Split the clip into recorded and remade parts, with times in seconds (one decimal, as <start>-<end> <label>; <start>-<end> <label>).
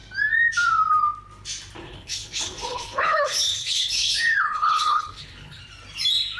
0.0-1.8 recorded; 1.8-5.6 remade; 5.6-6.4 recorded